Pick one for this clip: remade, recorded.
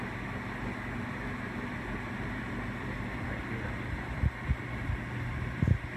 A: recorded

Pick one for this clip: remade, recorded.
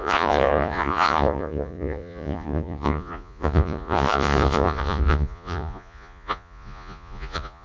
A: remade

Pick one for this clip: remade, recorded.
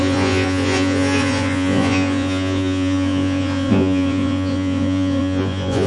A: remade